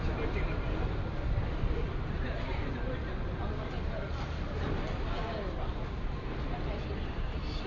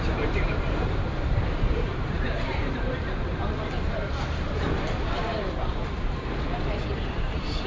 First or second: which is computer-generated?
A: second